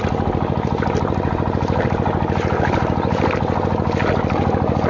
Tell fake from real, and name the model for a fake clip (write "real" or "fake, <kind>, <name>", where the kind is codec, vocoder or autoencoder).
real